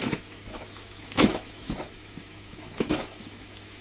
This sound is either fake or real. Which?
fake